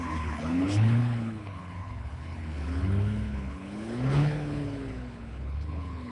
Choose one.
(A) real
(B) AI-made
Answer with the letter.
B